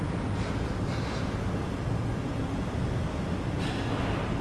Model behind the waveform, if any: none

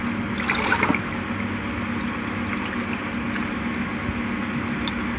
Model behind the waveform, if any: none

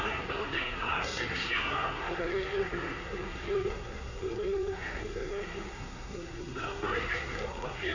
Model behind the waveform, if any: codec, SNAC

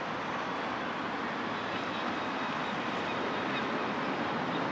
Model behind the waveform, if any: none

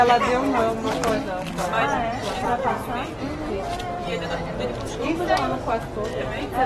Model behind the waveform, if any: none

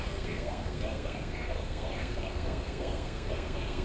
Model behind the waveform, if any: codec, SNAC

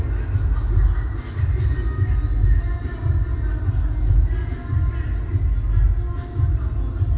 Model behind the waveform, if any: none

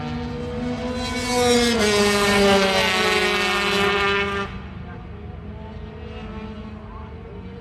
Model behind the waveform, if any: none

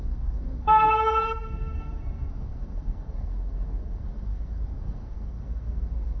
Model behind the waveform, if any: codec, SNAC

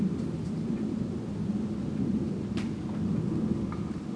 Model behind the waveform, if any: none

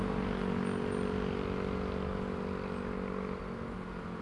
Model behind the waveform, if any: none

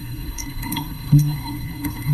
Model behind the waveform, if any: codec, SNAC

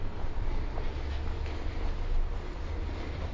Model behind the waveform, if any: none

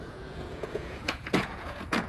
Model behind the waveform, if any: vocoder, Vocos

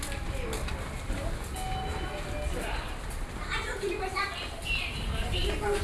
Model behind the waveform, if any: none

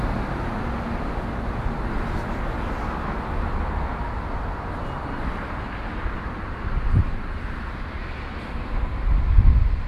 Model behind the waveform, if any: none